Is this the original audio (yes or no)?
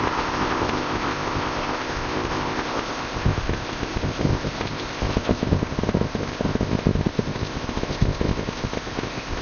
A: no